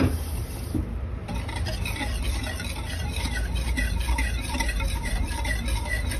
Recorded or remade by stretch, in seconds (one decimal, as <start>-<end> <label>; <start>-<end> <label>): 0.0-2.9 recorded; 2.9-5.1 remade; 5.1-6.2 recorded